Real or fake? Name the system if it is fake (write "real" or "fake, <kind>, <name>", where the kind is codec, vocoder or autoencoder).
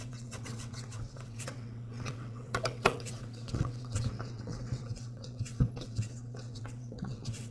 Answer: fake, vocoder, WaveNeXt